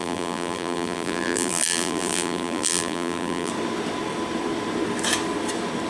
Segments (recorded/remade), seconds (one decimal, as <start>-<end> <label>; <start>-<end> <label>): 0.0-3.5 remade; 3.5-5.9 recorded